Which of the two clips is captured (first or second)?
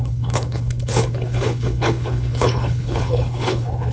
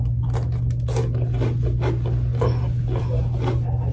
second